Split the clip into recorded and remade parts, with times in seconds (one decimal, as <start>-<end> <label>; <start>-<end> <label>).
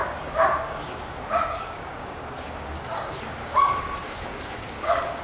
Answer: 0.0-5.2 remade